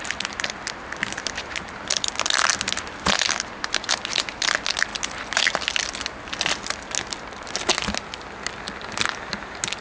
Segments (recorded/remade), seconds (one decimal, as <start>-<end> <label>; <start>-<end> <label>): 0.0-9.8 recorded